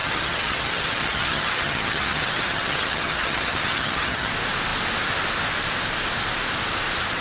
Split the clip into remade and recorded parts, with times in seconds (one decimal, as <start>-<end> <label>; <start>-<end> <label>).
0.0-4.3 remade; 4.3-7.2 recorded